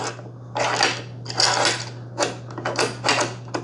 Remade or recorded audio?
recorded